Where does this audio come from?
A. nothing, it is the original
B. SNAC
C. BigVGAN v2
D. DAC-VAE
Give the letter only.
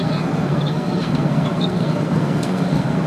B